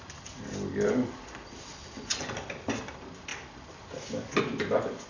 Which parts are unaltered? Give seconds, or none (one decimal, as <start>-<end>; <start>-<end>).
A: 0.0-5.1